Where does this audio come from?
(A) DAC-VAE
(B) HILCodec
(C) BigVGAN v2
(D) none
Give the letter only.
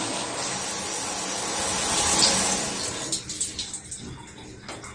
D